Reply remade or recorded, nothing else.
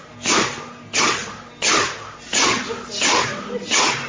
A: recorded